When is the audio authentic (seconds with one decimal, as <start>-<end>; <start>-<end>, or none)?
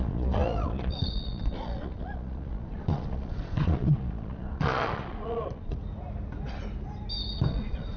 5.8-7.5